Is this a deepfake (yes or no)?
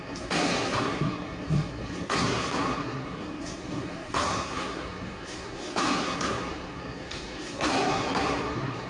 yes